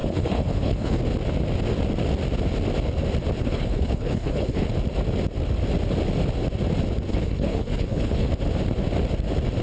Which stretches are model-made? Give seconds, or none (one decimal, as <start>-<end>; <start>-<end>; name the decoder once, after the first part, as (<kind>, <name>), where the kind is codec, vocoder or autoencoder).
0.0-1.0 (codec, HILCodec); 3.4-4.7; 7.1-8.3